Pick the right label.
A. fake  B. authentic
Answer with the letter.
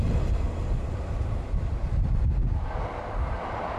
B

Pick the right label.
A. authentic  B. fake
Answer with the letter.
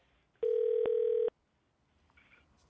A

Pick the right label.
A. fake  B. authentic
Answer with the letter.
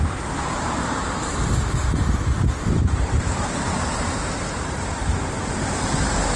A